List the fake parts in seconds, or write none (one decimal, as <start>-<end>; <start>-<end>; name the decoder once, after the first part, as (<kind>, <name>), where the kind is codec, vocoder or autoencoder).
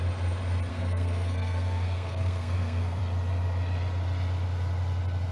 0.7-3.0 (codec, SNAC)